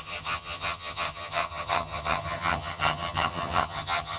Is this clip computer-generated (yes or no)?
yes